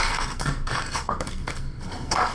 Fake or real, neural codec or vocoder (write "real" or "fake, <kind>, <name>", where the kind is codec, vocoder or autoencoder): fake, codec, SNAC